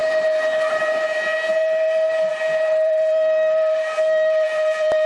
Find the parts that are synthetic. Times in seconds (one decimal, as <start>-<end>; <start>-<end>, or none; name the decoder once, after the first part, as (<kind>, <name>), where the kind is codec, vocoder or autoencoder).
0.0-0.7 (vocoder, BigVGAN v2); 2.3-5.1